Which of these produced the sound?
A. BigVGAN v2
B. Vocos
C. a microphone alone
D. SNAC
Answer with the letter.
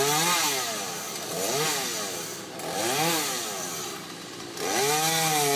C